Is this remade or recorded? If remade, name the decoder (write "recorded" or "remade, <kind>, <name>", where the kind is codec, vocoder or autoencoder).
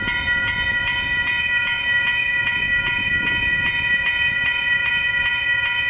remade, vocoder, Vocos